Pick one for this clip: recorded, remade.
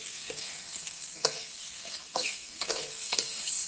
remade